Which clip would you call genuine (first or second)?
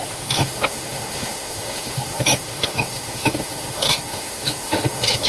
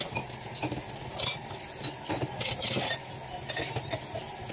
second